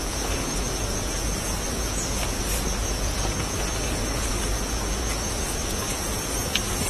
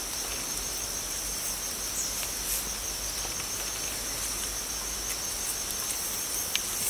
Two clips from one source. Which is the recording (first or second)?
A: second